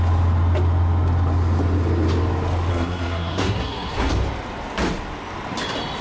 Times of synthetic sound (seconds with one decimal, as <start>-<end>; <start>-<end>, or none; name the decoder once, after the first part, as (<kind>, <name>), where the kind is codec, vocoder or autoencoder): 2.7-4.1 (codec, SNAC)